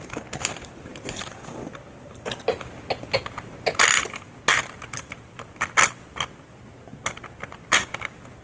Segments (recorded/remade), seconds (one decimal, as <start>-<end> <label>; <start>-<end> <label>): 0.0-8.4 recorded